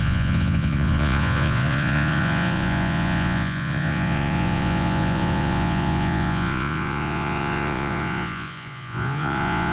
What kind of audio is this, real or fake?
fake